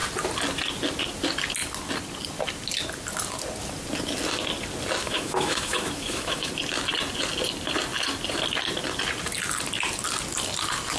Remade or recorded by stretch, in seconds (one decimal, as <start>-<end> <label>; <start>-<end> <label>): 0.0-5.0 recorded; 5.0-6.5 remade; 6.5-11.0 recorded